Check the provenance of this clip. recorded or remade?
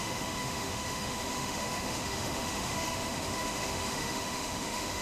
remade